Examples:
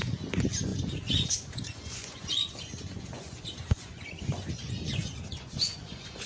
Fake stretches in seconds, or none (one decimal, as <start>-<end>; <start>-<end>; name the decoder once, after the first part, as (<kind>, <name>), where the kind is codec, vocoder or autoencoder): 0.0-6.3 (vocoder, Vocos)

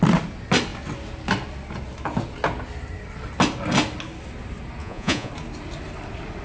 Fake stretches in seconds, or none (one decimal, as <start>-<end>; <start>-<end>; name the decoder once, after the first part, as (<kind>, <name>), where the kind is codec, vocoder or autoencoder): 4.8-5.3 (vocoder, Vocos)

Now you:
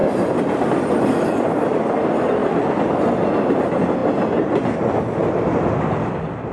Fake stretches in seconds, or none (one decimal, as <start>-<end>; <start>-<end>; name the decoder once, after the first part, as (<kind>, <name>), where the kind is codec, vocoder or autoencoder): 0.0-0.6 (vocoder, BigVGAN v2)